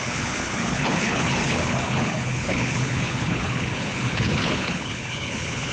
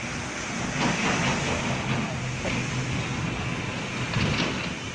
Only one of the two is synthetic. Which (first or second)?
first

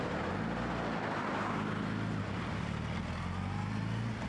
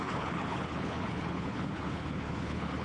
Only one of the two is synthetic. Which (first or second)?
second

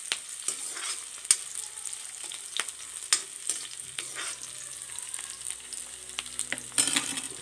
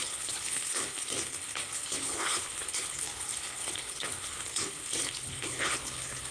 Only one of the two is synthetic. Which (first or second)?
second